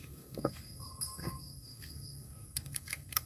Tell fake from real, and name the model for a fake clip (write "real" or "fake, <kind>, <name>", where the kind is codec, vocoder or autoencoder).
fake, codec, SNAC